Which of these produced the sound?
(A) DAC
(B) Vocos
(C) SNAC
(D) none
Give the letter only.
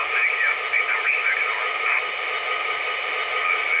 D